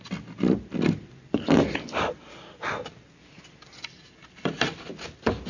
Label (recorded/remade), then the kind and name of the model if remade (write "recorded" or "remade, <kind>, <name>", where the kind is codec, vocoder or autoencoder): recorded